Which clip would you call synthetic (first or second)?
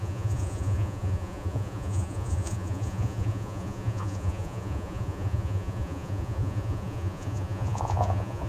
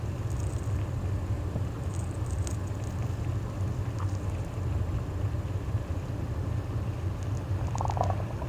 first